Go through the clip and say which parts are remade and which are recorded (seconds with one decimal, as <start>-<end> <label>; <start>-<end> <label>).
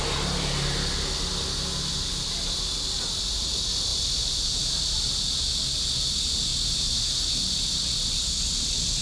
0.0-3.9 recorded; 3.9-5.2 remade; 5.2-6.5 recorded; 6.5-7.3 remade; 7.3-9.0 recorded